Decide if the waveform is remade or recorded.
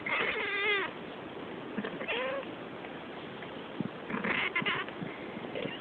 recorded